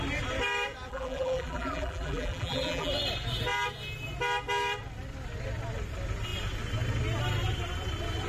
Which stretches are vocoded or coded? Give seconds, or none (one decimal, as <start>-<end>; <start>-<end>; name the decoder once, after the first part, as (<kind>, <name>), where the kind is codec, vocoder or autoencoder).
0.9-2.9 (vocoder, BigVGAN v2)